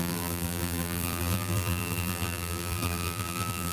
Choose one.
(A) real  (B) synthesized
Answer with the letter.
B